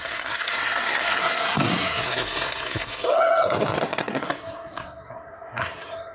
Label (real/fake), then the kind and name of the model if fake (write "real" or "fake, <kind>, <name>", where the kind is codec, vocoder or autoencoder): fake, codec, SNAC